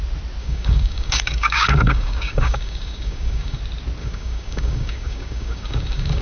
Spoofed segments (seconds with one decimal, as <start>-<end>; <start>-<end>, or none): 0.4-3.6; 4.0-6.2